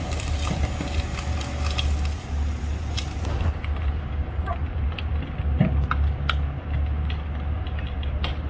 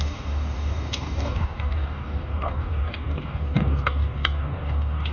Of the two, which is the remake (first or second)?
second